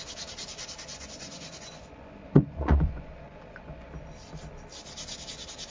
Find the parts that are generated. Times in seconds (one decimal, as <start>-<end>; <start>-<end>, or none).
0.9-3.9